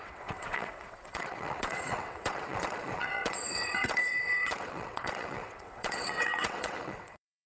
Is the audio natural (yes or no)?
no